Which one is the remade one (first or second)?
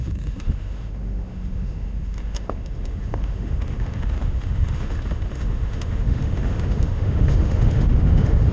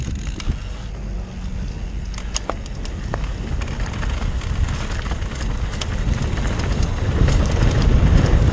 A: first